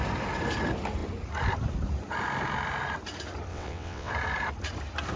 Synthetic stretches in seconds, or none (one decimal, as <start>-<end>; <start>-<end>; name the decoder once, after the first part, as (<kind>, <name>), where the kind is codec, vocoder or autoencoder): 3.5-4.1 (vocoder, WaveNeXt)